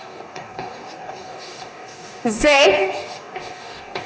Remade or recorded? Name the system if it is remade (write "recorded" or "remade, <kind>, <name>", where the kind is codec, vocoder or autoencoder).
remade, codec, DAC